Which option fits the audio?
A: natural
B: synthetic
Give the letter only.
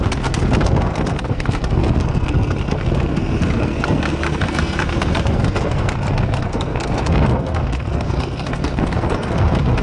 B